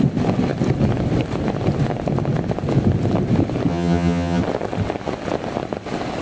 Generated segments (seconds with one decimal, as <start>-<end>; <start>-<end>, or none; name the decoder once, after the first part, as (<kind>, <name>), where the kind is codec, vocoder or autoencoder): 3.7-4.4 (vocoder, HiFi-GAN)